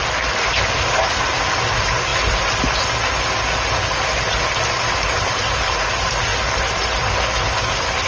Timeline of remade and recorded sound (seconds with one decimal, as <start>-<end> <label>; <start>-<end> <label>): 0.0-8.1 recorded